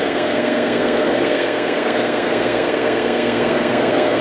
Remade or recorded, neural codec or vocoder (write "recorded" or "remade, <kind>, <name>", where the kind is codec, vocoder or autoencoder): remade, codec, SNAC